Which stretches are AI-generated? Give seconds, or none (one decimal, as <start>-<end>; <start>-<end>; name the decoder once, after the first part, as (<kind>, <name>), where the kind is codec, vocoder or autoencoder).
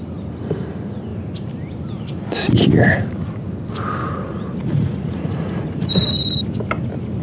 4.0-5.9 (vocoder, Vocos)